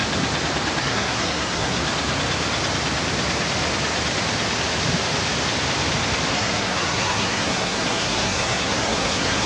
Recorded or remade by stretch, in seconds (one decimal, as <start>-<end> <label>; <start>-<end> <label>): 0.0-0.8 recorded; 0.8-1.8 remade; 1.8-6.3 recorded; 6.3-9.5 remade